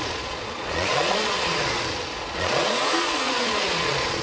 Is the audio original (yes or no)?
no